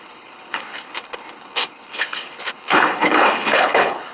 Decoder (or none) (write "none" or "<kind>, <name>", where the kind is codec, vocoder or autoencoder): codec, HILCodec